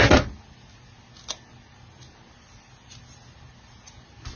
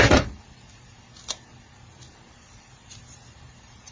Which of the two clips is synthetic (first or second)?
second